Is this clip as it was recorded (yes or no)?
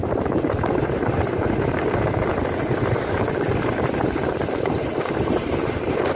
no